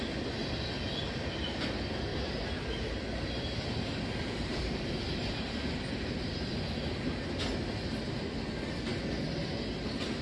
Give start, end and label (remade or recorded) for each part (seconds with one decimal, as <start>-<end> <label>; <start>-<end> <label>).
0.0-2.1 recorded; 2.1-7.2 remade; 7.2-10.2 recorded